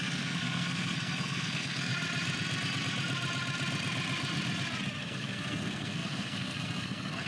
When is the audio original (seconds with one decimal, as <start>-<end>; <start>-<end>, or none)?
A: 1.9-5.0